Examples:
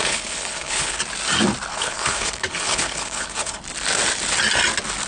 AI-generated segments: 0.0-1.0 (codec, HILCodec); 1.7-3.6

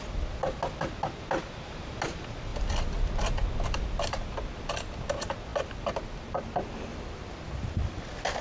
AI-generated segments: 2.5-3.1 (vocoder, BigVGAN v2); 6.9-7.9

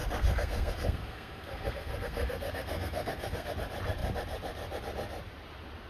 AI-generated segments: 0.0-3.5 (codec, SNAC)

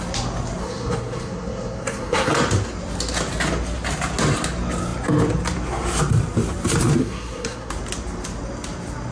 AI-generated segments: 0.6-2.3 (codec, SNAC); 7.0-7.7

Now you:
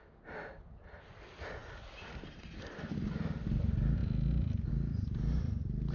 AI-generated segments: none

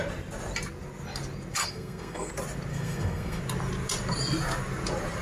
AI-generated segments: 1.6-2.3 (codec, SNAC); 2.7-3.4

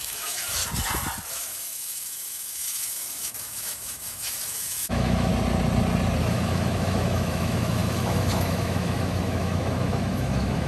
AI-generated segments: 0.0-0.6 (autoencoder, DAC-VAE); 1.3-5.3; 6.2-10.7

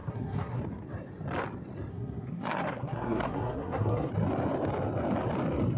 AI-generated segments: 0.0-0.6 (codec, SNAC); 1.9-4.1